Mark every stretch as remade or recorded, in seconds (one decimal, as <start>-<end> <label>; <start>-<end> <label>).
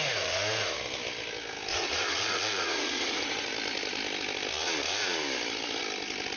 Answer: 0.0-1.7 recorded; 1.7-3.5 remade; 3.5-6.4 recorded